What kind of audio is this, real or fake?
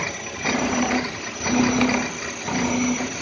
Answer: real